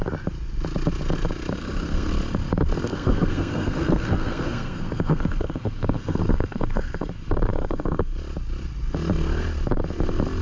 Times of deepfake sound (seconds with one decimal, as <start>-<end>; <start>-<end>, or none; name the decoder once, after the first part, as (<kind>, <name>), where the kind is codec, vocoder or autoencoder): 1.6-2.1 (codec, SNAC); 2.9-7.1; 7.5-8.1